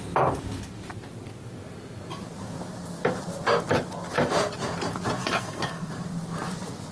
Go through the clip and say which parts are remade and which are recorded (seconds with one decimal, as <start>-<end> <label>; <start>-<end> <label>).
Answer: 0.0-5.2 recorded; 5.2-5.9 remade; 5.9-6.9 recorded